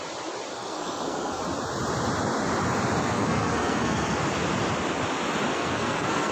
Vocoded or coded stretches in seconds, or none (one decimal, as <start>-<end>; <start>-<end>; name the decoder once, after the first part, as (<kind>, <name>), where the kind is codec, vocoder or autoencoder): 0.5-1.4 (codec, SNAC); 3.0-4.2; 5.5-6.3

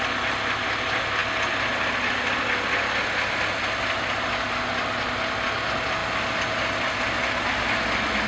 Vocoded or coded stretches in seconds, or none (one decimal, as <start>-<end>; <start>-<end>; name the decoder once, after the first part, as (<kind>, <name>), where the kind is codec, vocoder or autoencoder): none

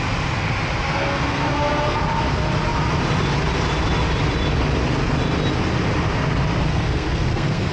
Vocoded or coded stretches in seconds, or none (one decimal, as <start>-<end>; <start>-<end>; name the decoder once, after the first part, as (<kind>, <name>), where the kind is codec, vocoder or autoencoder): 0.9-2.0 (codec, SNAC); 6.7-7.7